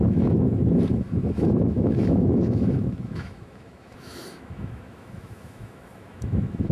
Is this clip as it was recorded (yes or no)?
no